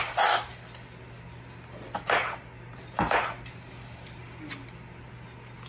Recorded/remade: recorded